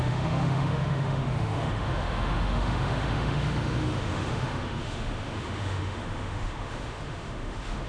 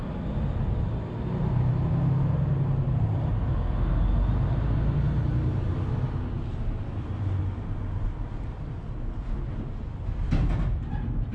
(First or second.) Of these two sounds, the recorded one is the second